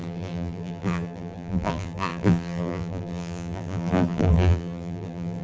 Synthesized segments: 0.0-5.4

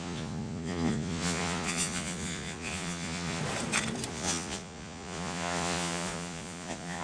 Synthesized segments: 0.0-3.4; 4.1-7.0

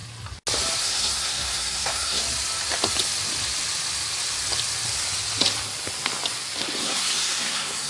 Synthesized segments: 0.8-2.2; 6.8-7.9